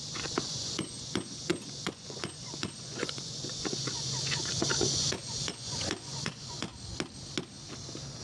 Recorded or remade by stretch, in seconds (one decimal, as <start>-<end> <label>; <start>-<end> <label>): 0.0-6.7 remade; 6.7-8.2 recorded